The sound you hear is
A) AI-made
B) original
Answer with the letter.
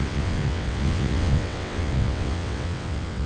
A